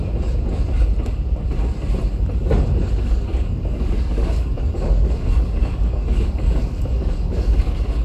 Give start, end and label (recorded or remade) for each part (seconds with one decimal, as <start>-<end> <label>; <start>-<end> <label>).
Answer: 0.0-3.0 recorded; 3.0-8.0 remade